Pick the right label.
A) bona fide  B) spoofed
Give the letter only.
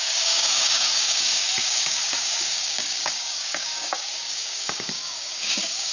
B